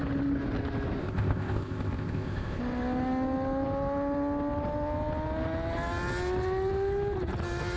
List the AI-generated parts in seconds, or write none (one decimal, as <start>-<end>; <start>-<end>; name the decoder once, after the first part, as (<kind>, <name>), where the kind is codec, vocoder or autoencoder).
1.0-2.6 (codec, ZipCodec)

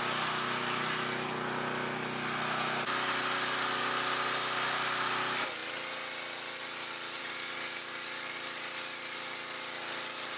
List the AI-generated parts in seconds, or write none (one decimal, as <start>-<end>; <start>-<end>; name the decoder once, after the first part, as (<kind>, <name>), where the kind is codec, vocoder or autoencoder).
none

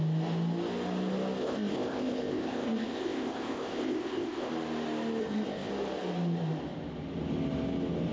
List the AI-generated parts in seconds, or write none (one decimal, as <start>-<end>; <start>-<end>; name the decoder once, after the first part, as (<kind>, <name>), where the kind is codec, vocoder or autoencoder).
1.4-4.5 (codec, ZipCodec); 5.2-5.7

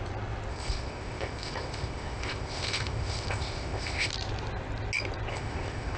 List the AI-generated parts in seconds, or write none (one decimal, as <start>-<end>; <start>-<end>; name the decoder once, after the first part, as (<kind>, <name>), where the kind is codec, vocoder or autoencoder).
0.5-4.1 (codec, ZipCodec); 5.3-6.0

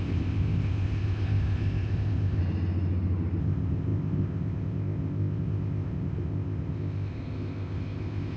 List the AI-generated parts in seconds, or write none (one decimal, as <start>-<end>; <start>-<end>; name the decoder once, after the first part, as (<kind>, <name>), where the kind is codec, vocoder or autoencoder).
0.0-2.4 (codec, ZipCodec); 3.4-8.4

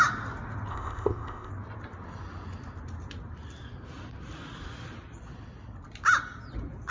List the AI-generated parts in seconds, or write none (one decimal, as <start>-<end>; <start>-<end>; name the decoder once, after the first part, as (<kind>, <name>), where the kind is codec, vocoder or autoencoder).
0.7-1.5 (codec, ZipCodec)